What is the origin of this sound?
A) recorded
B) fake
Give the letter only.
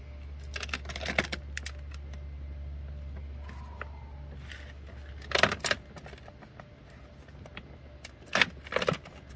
A